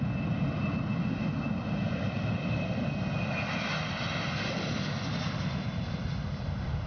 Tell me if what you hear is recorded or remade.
recorded